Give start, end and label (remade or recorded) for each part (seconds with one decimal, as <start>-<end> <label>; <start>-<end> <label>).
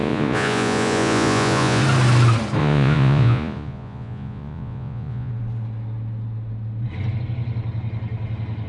0.0-1.8 remade; 1.8-2.6 recorded; 2.6-5.3 remade; 5.3-8.7 recorded